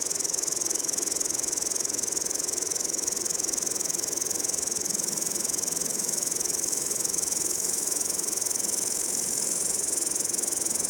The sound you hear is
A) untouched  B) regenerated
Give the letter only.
B